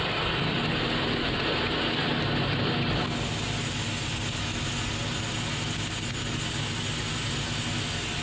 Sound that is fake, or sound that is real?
real